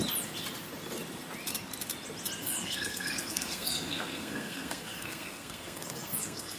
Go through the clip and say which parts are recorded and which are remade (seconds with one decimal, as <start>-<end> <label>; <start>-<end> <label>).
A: 0.0-2.4 recorded; 2.4-6.6 remade